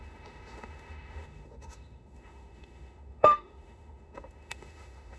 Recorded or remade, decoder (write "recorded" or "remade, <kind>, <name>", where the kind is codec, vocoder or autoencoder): remade, autoencoder, DAC-VAE